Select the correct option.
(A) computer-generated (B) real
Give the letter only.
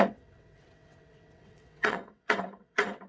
A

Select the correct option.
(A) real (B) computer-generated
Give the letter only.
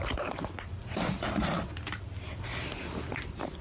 A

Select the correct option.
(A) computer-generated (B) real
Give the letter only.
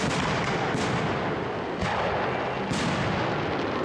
B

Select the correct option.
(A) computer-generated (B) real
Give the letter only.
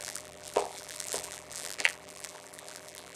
A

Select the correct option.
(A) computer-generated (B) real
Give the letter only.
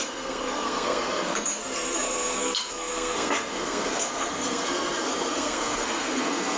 A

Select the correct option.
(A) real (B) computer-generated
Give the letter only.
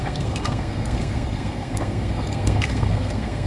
B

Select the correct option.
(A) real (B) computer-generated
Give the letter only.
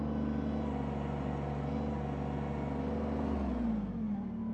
A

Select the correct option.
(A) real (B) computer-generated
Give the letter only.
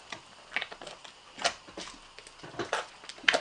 B